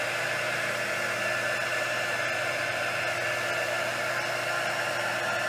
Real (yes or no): yes